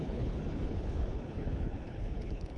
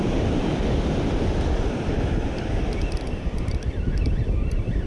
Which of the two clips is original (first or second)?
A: second